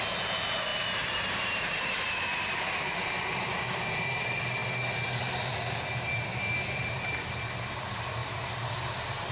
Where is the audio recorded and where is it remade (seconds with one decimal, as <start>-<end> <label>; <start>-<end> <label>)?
0.0-0.7 recorded; 0.7-3.9 remade; 3.9-9.3 recorded